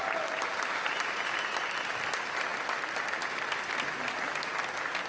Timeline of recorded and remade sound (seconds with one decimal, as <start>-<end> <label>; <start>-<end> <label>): 0.0-5.1 recorded

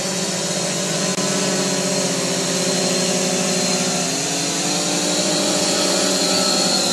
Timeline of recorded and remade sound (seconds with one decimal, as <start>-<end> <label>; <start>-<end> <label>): 0.0-1.1 remade; 1.1-5.2 recorded; 5.2-6.9 remade

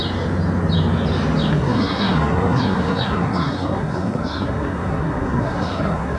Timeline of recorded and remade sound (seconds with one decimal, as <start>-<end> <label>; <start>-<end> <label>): 0.0-1.5 recorded; 1.5-6.2 remade

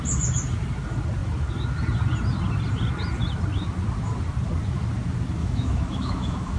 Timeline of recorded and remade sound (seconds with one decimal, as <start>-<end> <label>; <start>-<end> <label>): 0.0-5.4 recorded; 5.4-6.6 remade

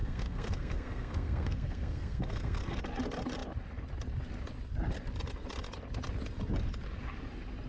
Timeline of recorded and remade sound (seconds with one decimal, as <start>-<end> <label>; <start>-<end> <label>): 0.0-2.8 remade; 2.8-7.7 recorded